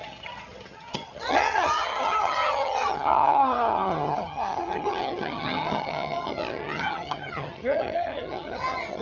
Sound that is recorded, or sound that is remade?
remade